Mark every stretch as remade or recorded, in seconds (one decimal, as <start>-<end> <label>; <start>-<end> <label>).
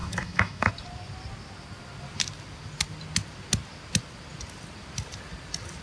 0.0-0.7 remade; 0.7-5.8 recorded